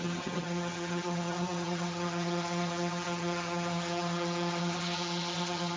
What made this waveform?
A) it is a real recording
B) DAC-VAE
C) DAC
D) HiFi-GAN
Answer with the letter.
D